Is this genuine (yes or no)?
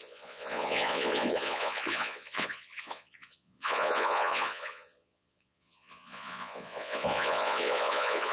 no